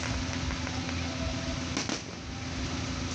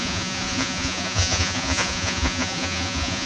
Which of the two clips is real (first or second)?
first